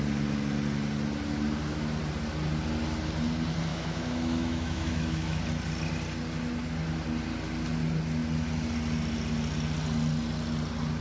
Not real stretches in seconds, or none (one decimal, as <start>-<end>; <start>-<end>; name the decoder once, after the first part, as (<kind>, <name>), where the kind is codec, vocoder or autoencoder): 3.7-5.4 (autoencoder, DAC-VAE)